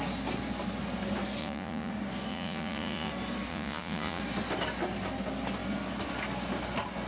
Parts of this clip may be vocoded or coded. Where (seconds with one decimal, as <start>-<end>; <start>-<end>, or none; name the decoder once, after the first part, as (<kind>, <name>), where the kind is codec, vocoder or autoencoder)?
1.4-1.9 (vocoder, Vocos); 2.3-3.1; 3.5-4.2